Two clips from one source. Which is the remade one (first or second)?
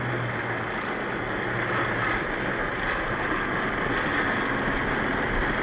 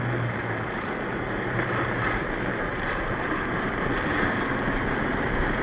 second